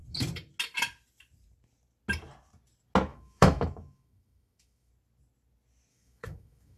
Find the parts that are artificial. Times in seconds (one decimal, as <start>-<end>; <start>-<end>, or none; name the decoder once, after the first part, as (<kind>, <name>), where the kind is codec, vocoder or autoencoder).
3.1-4.9 (autoencoder, DAC-VAE); 5.9-6.8